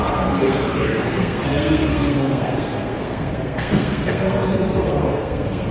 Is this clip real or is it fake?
fake